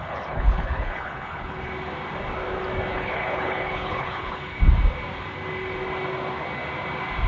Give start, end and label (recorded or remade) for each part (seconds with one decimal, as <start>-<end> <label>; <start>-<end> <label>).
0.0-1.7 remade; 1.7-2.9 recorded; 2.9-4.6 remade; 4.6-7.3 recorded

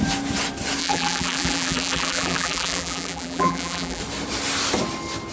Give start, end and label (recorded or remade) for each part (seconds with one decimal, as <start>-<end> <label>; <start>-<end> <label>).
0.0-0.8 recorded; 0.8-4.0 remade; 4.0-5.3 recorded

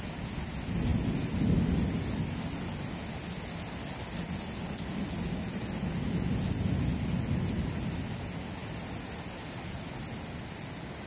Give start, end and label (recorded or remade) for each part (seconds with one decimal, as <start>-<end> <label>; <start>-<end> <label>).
0.0-11.1 recorded

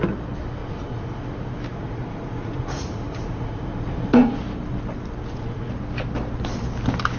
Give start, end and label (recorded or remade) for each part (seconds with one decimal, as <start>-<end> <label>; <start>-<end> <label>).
0.0-0.6 recorded; 0.6-1.2 remade; 1.2-1.7 recorded; 1.7-4.4 remade; 4.4-5.2 recorded; 5.2-5.7 remade; 5.7-7.2 recorded

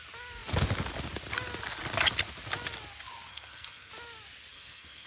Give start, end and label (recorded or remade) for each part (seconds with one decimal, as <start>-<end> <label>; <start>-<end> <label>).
0.0-3.3 recorded; 3.3-3.9 remade; 3.9-4.5 recorded; 4.5-5.1 remade